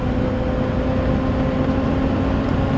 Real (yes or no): yes